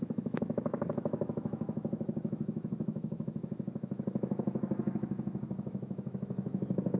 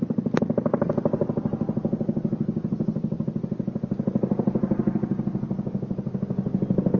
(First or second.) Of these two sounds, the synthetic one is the first